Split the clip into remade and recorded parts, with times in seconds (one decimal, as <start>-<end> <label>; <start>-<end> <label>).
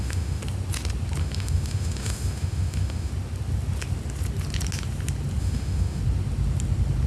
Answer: 0.0-0.4 remade; 0.4-1.2 recorded; 1.2-3.1 remade; 3.1-5.4 recorded; 5.4-6.0 remade; 6.0-7.1 recorded